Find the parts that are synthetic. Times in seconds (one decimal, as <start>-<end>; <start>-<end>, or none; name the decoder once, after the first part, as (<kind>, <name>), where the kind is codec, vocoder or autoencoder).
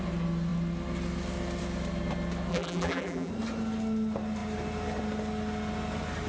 2.5-3.3 (vocoder, BigVGAN v2)